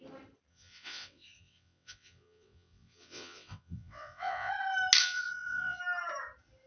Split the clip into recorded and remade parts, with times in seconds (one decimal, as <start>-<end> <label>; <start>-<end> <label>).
0.0-0.5 recorded; 0.5-4.5 remade; 4.5-5.0 recorded; 5.0-5.8 remade; 5.8-6.7 recorded